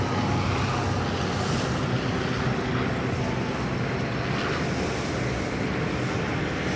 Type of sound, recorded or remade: recorded